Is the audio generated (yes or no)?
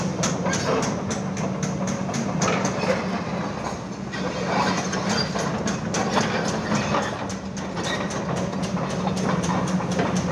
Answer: no